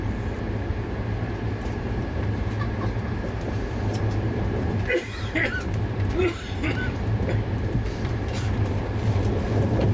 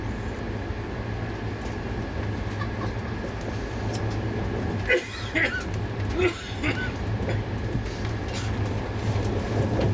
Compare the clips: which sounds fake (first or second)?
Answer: first